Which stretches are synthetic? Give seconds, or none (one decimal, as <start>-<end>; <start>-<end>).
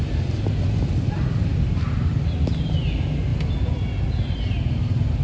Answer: none